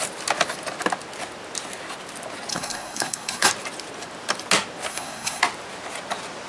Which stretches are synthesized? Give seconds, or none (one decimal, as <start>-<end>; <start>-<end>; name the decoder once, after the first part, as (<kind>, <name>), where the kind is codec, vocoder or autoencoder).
2.5-3.5 (codec, SNAC); 4.9-5.4